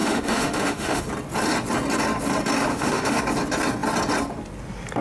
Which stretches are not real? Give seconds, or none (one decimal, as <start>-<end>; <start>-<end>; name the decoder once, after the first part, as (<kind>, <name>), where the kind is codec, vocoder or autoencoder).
0.0-1.1 (autoencoder, DAC-VAE); 2.7-3.2